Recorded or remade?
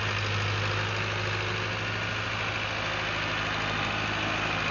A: recorded